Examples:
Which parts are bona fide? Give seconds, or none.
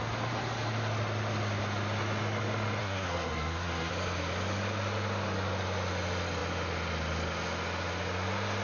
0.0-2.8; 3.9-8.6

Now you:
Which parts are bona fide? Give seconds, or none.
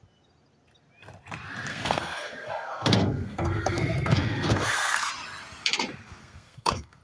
0.0-1.7; 5.1-6.2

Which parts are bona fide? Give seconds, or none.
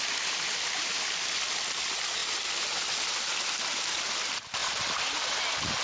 0.0-5.8